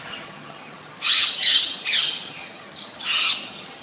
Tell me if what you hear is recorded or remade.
remade